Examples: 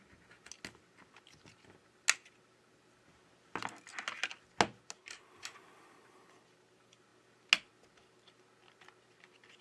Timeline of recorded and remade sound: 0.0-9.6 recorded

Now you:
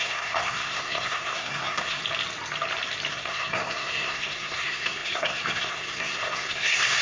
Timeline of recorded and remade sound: 0.0-2.0 remade; 2.0-3.1 recorded; 3.1-7.0 remade

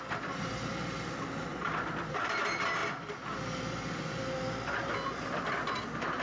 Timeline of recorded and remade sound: 0.0-6.2 recorded

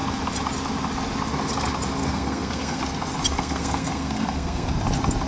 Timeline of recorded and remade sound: 0.0-2.0 recorded; 2.0-2.8 remade; 2.8-3.3 recorded; 3.3-4.7 remade; 4.7-5.3 recorded

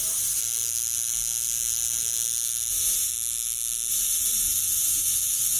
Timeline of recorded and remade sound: 0.0-0.4 remade; 0.4-2.7 recorded; 2.7-3.1 remade; 3.1-3.9 recorded; 3.9-5.6 remade

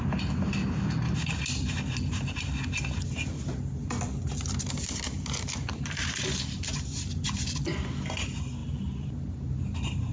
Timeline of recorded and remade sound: 0.0-10.1 recorded

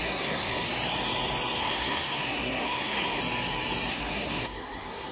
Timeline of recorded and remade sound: 0.0-0.7 remade; 0.7-1.6 recorded; 1.6-3.2 remade; 3.2-3.9 recorded; 3.9-5.1 remade